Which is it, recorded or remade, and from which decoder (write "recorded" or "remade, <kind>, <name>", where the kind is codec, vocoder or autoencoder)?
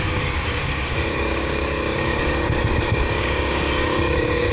remade, codec, DAC